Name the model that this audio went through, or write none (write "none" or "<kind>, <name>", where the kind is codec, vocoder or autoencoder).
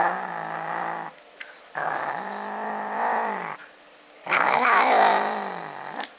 none